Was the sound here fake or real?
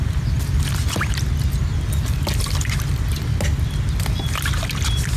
real